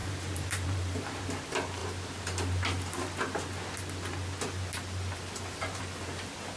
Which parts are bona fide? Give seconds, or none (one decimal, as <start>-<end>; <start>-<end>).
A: 1.2-6.6